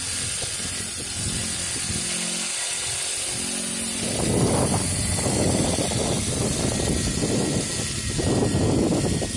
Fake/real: real